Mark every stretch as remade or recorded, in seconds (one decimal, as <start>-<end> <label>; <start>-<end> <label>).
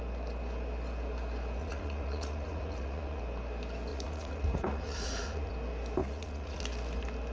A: 0.0-1.6 recorded; 1.6-3.2 remade; 3.2-3.9 recorded; 3.9-5.5 remade; 5.5-6.0 recorded; 6.0-6.6 remade; 6.6-7.3 recorded